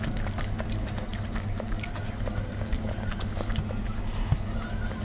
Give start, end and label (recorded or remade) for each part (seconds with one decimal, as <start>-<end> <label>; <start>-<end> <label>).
0.0-5.0 recorded